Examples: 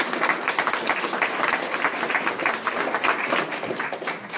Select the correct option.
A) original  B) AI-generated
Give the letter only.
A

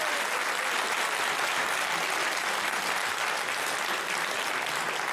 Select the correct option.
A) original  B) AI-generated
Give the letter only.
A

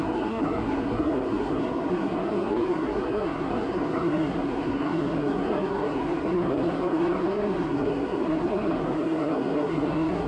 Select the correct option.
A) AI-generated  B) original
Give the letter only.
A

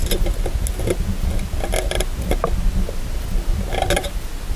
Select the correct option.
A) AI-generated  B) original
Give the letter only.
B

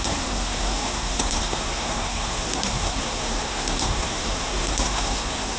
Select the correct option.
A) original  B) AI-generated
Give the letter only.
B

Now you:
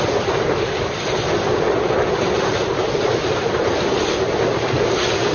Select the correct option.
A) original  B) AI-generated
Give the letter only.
A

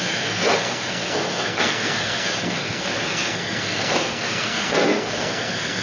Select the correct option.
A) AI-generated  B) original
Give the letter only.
A